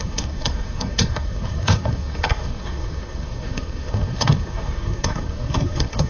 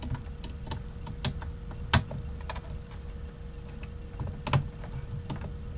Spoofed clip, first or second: first